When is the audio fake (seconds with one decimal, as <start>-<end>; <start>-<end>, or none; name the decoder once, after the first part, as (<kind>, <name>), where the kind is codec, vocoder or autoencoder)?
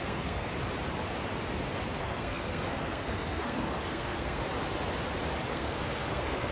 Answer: 0.0-0.5 (codec, SNAC); 2.0-4.4; 5.5-6.5